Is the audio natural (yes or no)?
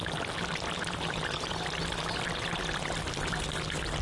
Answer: no